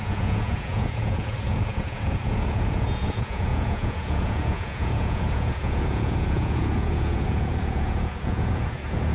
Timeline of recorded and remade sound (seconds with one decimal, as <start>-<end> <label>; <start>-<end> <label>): 0.0-9.1 remade